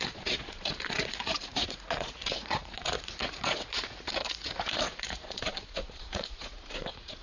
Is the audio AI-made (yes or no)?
yes